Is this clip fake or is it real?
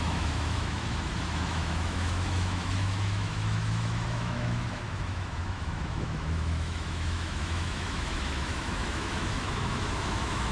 fake